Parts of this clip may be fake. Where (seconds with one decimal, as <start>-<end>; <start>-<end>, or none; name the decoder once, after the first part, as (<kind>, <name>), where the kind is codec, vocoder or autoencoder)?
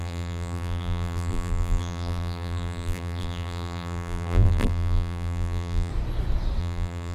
0.0-5.9 (vocoder, BigVGAN v2); 6.6-7.1